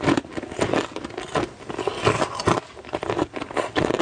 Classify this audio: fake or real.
real